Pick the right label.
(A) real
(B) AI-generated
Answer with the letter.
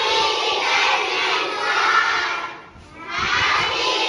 A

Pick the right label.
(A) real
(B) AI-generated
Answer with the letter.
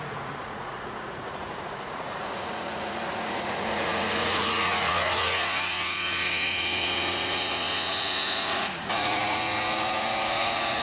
B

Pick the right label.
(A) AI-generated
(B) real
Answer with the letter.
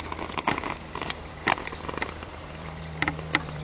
A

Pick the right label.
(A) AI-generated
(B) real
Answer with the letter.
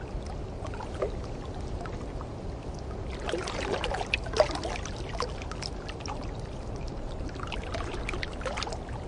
B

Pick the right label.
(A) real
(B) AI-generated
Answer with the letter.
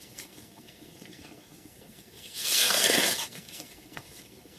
B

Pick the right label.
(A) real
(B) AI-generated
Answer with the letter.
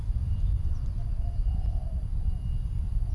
A